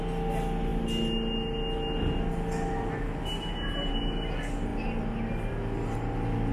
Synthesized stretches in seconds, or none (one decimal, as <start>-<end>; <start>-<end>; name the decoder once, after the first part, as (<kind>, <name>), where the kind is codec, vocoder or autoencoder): none

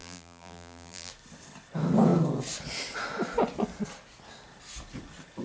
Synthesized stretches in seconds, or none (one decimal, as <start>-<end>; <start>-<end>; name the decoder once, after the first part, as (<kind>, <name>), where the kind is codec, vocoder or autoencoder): 0.0-1.1 (vocoder, BigVGAN v2)